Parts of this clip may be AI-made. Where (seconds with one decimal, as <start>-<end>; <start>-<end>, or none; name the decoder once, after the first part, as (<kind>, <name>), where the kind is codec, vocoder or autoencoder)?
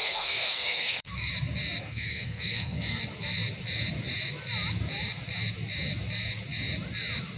0.0-1.3 (codec, SNAC); 1.8-3.0